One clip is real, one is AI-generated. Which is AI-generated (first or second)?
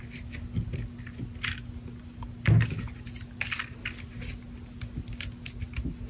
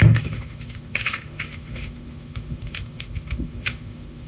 second